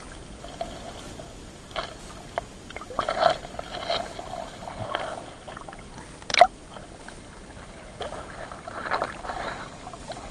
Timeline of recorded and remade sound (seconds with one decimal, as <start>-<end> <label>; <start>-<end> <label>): 0.0-10.3 recorded